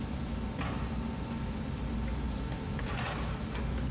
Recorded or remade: recorded